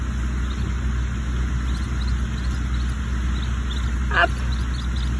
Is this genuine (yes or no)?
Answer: yes